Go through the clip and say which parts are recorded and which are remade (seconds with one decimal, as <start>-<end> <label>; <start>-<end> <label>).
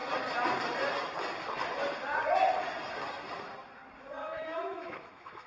0.0-4.2 recorded; 4.2-5.5 remade